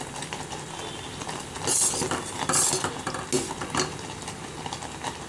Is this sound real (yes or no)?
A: yes